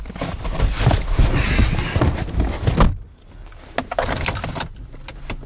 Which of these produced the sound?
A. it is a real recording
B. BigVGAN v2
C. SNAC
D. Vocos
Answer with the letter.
A